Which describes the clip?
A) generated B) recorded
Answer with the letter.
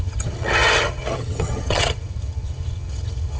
A